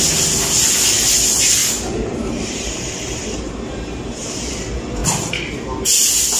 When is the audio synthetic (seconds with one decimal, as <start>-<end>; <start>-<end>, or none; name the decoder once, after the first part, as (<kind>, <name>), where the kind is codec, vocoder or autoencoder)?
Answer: 1.6-4.5 (vocoder, BigVGAN v2)

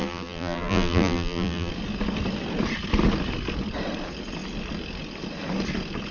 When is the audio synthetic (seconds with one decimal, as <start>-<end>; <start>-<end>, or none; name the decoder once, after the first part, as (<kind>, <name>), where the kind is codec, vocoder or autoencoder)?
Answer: 0.0-1.7 (vocoder, BigVGAN v2)